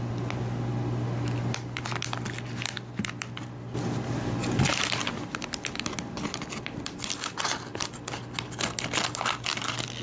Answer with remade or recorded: recorded